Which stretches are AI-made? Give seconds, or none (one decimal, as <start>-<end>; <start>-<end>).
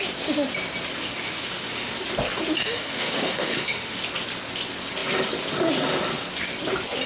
1.0-1.9; 2.6-4.0